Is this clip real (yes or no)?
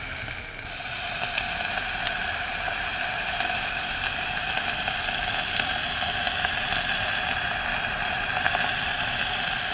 yes